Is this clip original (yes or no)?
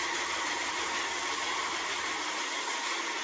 yes